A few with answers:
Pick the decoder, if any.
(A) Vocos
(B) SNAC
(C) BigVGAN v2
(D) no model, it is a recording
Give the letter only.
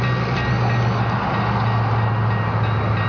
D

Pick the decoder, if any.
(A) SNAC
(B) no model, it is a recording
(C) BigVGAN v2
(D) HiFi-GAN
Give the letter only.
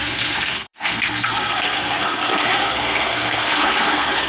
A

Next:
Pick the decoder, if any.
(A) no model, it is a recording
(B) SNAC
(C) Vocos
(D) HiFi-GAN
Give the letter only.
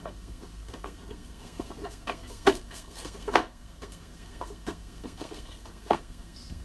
B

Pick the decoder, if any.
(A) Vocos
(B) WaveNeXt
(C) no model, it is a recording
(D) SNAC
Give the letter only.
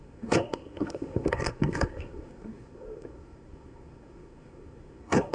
D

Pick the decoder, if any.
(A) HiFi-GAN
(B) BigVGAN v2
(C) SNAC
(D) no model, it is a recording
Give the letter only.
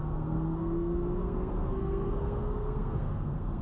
C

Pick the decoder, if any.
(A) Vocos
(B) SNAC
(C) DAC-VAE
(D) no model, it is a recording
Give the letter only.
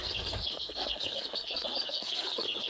B